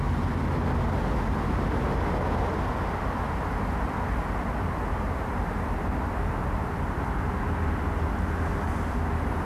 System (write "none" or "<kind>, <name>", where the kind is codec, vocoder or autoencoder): none